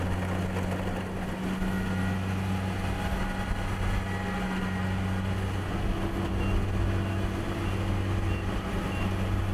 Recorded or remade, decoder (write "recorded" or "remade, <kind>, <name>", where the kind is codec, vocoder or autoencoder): recorded